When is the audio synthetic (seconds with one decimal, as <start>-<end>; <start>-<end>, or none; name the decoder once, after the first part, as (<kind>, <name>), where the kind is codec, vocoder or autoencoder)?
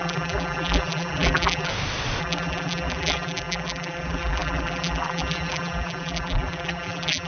0.0-1.7 (vocoder, BigVGAN v2); 2.2-7.3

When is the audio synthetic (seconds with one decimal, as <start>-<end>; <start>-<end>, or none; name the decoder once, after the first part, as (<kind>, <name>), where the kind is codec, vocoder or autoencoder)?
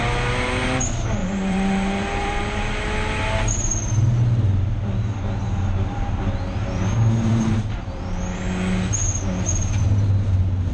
1.2-2.7 (vocoder, BigVGAN v2); 7.3-8.2